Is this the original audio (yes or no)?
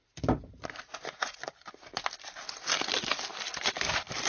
yes